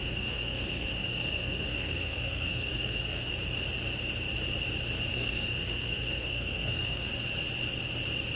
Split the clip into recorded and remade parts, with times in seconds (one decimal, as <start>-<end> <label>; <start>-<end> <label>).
0.0-3.3 remade; 3.3-5.1 recorded; 5.1-7.1 remade; 7.1-8.4 recorded